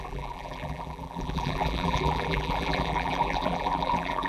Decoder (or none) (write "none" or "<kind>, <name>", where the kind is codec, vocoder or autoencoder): vocoder, BigVGAN v2